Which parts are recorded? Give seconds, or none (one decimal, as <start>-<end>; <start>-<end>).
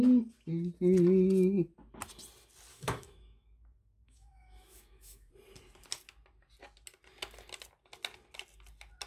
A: 0.0-2.7; 5.3-9.1